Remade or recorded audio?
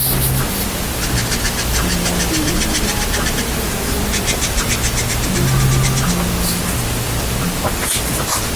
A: recorded